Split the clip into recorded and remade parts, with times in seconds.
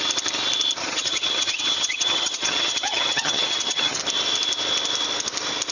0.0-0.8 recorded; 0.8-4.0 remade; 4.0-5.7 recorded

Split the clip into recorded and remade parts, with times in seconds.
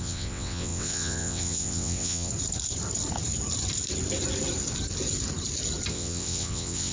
0.0-2.3 remade; 2.3-5.9 recorded; 5.9-6.9 remade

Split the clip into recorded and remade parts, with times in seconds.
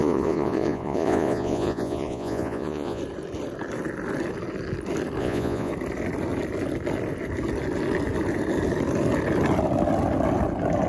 0.0-3.0 remade; 3.0-5.2 recorded; 5.2-5.7 remade; 5.7-10.9 recorded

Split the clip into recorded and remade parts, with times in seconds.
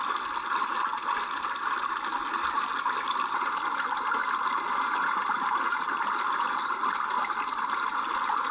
0.0-8.5 recorded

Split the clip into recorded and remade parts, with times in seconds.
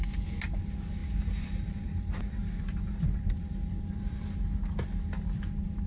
0.0-1.0 recorded; 1.0-4.4 remade; 4.4-5.9 recorded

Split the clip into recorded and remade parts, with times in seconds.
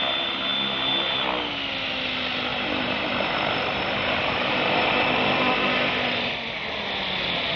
0.0-2.5 recorded; 2.5-4.9 remade; 4.9-7.6 recorded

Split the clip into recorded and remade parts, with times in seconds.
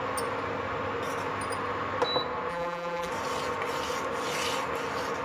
0.0-2.5 recorded; 2.5-3.1 remade; 3.1-5.2 recorded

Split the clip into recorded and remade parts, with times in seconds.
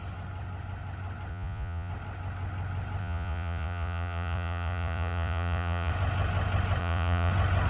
0.0-1.3 recorded; 1.3-1.9 remade; 1.9-3.0 recorded; 3.0-5.9 remade; 5.9-6.8 recorded; 6.8-7.3 remade; 7.3-7.7 recorded